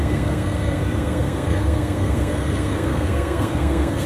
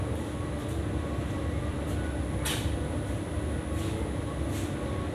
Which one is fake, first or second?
first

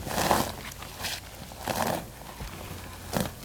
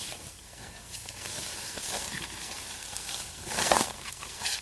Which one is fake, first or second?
second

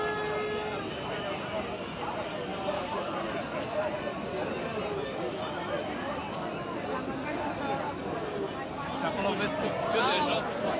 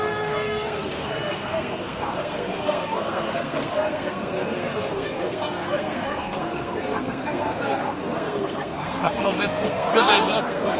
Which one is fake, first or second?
second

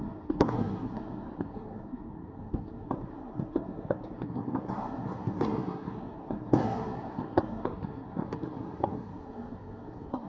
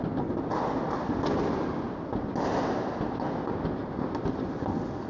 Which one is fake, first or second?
first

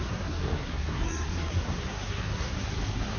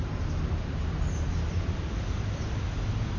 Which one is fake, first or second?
first